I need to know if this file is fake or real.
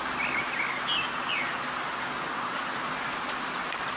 real